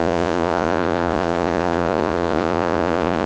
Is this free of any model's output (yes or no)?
no